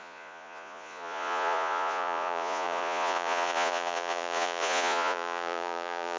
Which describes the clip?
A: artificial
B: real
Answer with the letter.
A